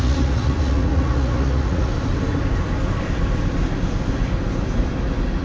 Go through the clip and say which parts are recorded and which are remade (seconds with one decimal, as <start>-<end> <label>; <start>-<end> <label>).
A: 0.0-1.9 remade; 1.9-5.4 recorded